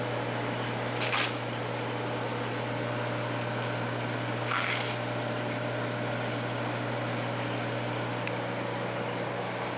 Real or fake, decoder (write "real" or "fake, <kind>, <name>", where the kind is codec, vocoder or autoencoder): real